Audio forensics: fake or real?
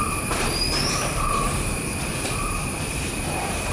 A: fake